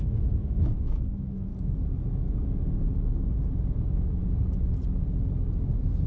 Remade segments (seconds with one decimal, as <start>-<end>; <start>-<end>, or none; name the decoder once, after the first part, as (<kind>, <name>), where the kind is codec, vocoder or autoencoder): 0.0-1.5 (autoencoder, DAC-VAE); 3.8-4.2